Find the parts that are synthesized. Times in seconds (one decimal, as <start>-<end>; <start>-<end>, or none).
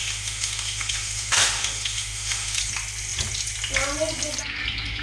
0.0-2.6